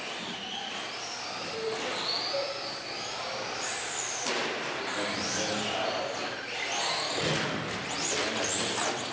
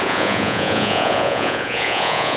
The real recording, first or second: first